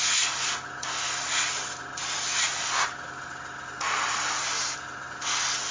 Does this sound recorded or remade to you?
recorded